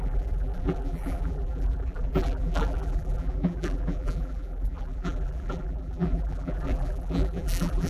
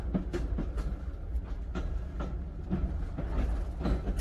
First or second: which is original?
second